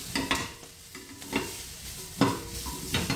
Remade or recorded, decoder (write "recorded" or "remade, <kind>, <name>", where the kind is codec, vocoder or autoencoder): recorded